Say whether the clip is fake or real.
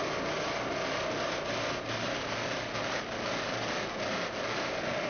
real